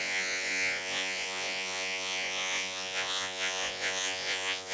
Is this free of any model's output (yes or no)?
no